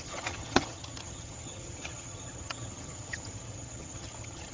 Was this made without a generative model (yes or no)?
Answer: no